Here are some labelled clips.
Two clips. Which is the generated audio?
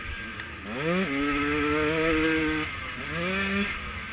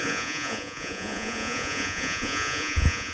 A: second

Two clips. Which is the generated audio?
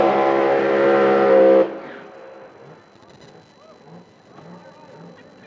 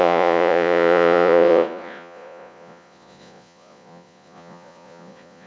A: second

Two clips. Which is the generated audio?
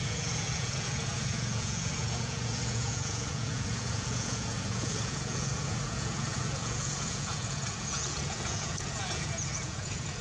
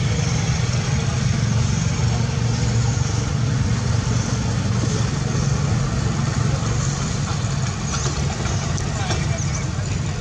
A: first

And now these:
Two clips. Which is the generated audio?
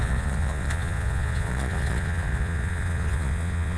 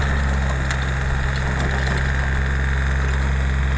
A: first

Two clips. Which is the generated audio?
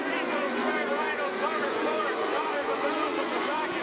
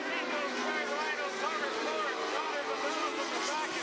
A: first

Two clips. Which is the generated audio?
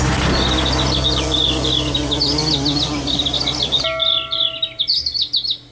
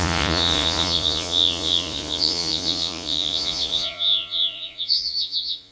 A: second